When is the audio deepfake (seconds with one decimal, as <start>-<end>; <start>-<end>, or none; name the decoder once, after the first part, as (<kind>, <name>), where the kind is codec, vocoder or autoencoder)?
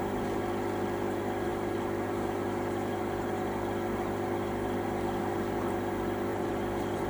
6.3-7.1 (vocoder, BigVGAN v2)